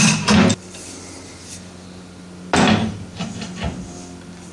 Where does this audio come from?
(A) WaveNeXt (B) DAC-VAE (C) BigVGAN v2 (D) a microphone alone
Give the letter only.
C